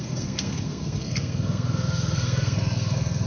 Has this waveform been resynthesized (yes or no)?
yes